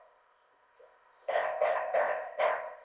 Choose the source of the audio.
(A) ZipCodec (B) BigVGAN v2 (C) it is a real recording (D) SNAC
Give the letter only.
A